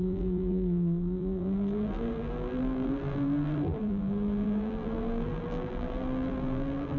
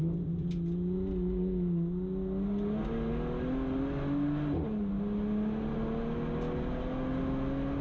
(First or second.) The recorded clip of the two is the second